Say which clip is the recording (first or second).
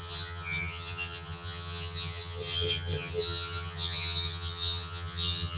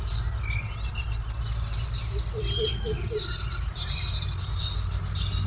second